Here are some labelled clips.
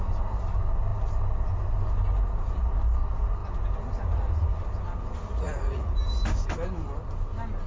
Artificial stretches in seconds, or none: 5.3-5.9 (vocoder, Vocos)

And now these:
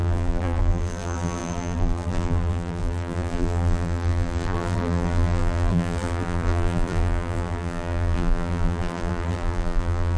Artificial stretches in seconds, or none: 0.0-10.2 (vocoder, BigVGAN v2)

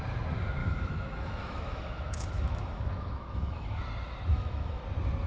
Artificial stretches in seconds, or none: 0.6-3.8 (autoencoder, DAC-VAE); 4.3-4.8